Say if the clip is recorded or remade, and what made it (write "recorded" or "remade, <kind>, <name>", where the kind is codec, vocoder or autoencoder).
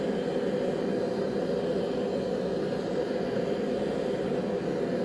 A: recorded